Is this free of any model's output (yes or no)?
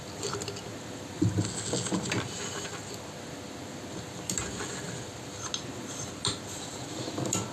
yes